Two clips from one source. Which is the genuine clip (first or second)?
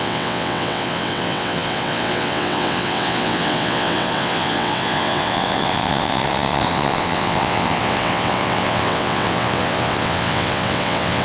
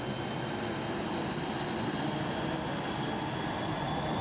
second